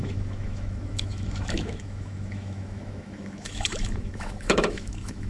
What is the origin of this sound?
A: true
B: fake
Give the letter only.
B